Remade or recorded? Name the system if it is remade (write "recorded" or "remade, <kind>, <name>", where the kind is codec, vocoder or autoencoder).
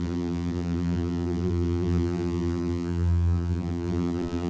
remade, vocoder, BigVGAN v2